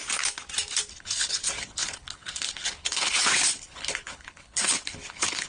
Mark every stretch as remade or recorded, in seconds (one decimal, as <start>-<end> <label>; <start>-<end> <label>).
0.0-0.9 recorded; 0.9-5.5 remade